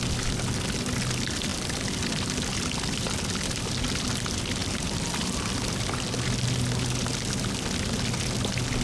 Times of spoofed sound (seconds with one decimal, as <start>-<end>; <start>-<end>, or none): 1.5-2.2; 4.6-5.5